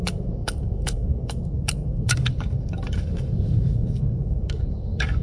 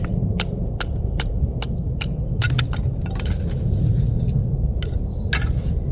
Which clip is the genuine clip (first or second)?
second